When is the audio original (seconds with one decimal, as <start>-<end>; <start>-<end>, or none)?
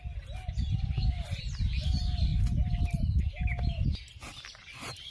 0.0-5.1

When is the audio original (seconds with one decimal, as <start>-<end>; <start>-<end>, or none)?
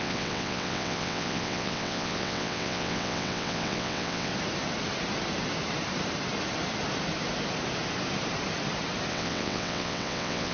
4.3-9.1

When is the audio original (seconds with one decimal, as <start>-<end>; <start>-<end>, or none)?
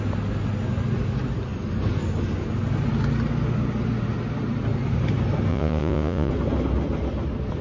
0.0-5.5; 6.3-7.6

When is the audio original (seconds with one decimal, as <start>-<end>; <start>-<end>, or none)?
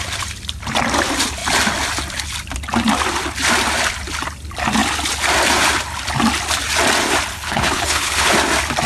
0.0-7.3; 8.3-8.9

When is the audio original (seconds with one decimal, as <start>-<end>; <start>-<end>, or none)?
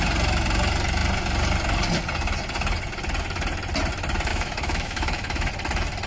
0.0-4.3; 5.5-6.1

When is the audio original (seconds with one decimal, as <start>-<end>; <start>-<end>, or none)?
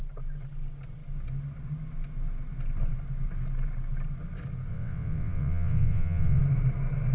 0.0-4.7; 6.4-7.1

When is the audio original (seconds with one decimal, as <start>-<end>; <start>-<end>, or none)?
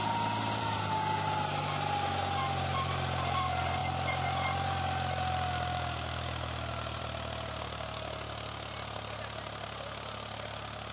0.0-10.9